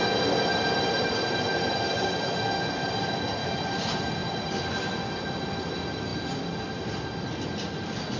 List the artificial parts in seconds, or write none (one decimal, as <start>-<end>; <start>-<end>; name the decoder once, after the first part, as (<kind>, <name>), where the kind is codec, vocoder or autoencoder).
none

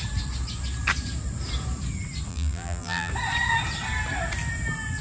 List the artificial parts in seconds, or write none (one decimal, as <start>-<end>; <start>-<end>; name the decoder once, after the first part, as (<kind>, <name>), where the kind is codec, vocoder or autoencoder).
2.3-3.1 (vocoder, BigVGAN v2)

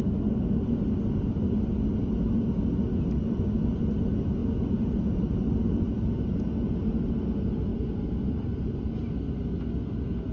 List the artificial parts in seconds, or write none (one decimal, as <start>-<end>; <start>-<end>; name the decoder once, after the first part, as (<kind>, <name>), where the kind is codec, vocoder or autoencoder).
4.4-5.6 (vocoder, BigVGAN v2); 7.7-8.8

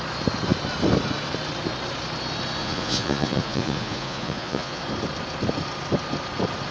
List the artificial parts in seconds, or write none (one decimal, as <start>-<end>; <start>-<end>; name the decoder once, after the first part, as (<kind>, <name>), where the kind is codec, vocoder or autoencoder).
2.6-4.8 (vocoder, Vocos)

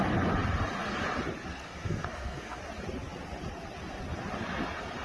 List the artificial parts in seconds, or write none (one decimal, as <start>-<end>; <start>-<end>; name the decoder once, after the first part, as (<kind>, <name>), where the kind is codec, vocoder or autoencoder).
1.5-2.6 (codec, SNAC)

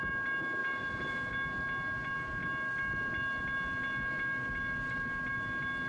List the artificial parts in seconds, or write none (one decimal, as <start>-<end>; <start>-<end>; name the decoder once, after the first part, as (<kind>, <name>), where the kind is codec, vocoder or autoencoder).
0.6-1.3 (vocoder, Vocos)

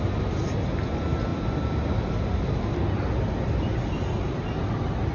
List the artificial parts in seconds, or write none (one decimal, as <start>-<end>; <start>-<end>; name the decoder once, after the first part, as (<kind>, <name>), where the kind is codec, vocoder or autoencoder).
none

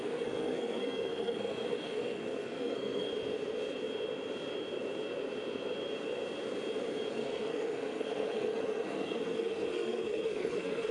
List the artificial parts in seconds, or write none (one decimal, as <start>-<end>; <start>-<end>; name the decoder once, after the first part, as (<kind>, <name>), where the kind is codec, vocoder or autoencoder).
0.0-3.1 (codec, SNAC); 7.1-10.9